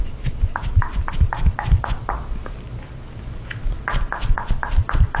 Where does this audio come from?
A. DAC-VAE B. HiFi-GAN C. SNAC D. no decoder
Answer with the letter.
D